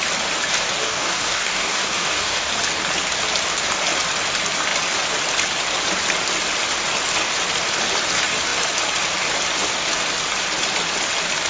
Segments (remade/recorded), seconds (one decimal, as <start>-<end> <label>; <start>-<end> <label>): 0.0-0.8 recorded; 0.8-2.5 remade; 2.5-11.5 recorded